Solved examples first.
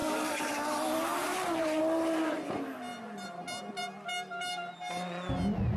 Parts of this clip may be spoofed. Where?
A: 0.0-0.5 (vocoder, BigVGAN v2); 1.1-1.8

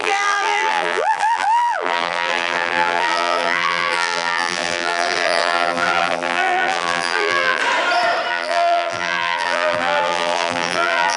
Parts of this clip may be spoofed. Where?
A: 0.0-7.6 (vocoder, BigVGAN v2); 8.3-11.2